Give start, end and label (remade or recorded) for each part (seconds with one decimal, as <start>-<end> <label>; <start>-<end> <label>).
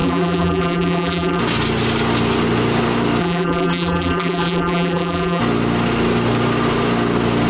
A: 0.0-1.4 remade; 1.4-3.2 recorded; 3.2-5.4 remade; 5.4-7.5 recorded